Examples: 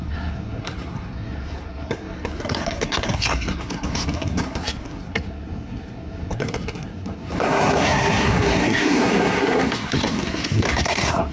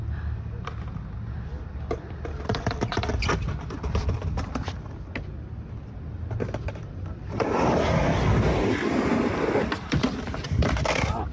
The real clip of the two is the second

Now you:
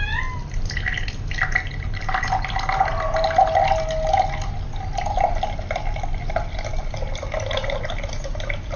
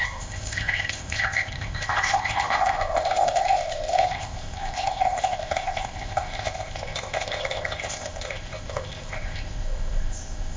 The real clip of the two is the first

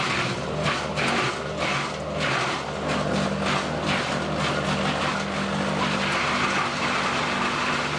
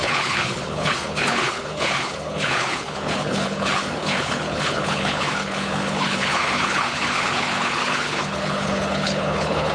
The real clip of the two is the first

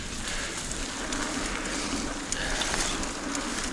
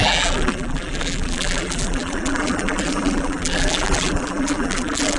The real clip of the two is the first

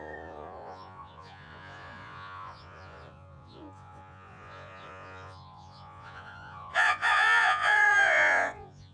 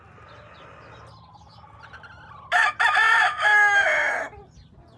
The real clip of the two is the second